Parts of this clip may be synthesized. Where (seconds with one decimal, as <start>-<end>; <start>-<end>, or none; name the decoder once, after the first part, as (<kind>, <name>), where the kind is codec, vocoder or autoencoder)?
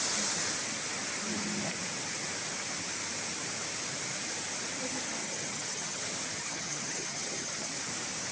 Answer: 5.2-6.0 (vocoder, HiFi-GAN); 6.4-7.7